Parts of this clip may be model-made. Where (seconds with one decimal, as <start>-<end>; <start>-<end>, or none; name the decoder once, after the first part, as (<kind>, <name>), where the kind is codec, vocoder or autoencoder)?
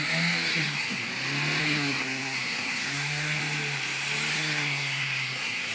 0.5-1.1 (codec, SNAC); 1.6-3.4; 4.3-5.7